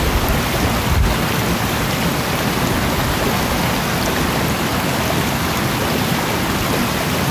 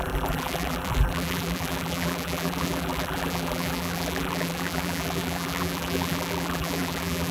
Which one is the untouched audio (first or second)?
first